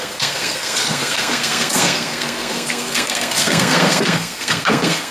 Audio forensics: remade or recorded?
remade